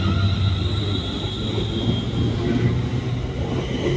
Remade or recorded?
recorded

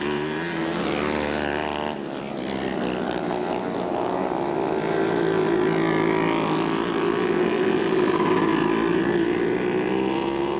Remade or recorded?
recorded